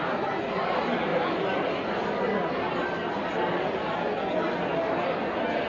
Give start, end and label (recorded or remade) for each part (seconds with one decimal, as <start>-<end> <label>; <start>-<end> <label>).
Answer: 0.0-5.7 recorded